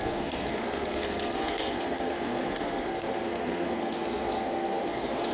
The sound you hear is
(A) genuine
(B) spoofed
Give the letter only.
B